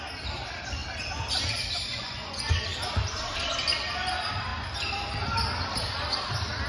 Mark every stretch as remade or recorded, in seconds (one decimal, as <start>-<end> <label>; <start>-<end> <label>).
0.0-1.9 recorded; 1.9-2.5 remade; 2.5-6.7 recorded